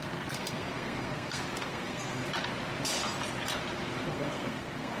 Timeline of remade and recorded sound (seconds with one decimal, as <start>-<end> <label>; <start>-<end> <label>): 0.0-2.2 remade; 2.2-4.1 recorded; 4.1-5.0 remade